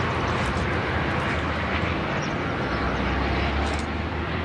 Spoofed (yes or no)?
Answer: no